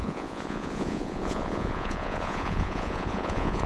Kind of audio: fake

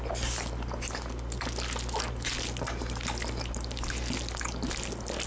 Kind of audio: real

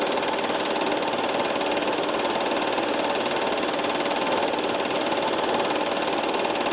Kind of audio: real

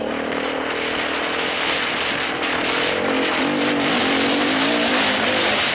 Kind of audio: real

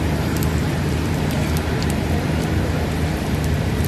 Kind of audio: fake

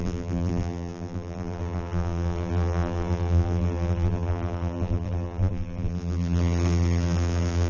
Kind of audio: fake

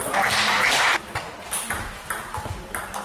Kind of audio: real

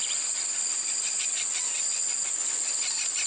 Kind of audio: real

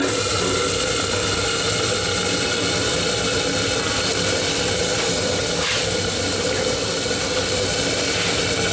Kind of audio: real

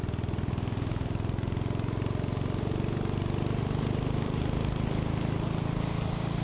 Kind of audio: real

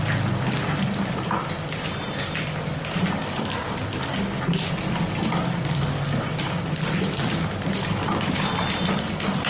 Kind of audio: real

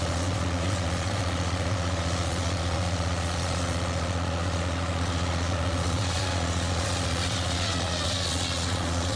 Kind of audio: fake